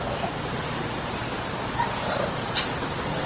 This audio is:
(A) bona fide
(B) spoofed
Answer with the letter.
B